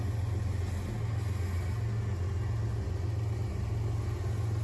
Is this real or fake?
real